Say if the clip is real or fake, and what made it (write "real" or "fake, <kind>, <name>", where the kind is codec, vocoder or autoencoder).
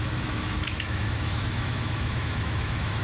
fake, autoencoder, DAC-VAE